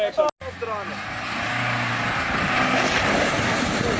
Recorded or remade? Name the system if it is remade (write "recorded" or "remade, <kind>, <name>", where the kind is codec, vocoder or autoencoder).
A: recorded